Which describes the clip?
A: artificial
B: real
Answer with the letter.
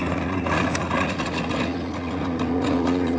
A